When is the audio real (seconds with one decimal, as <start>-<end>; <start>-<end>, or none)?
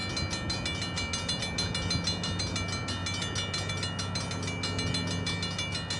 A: 0.0-6.0